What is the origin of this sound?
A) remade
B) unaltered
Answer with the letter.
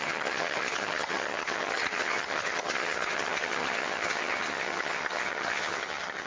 A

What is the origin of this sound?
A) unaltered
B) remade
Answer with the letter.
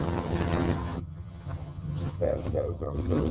B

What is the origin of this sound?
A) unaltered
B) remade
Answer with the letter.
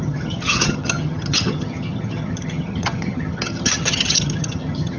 B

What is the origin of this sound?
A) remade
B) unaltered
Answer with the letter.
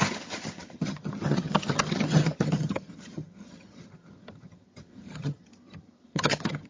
A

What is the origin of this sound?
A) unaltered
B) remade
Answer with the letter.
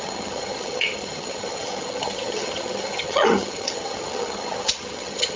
B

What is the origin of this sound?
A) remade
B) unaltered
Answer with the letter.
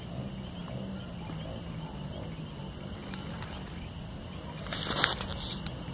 B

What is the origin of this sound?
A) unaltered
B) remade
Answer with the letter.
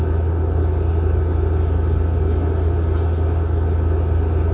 A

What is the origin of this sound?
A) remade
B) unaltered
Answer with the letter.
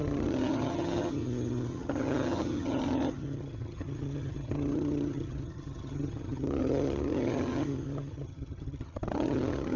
A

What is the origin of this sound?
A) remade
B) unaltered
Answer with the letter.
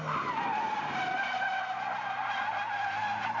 B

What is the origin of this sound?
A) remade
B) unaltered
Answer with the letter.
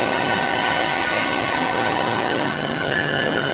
A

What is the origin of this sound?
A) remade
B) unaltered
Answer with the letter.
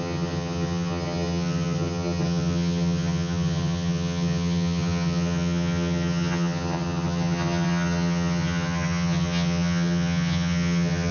A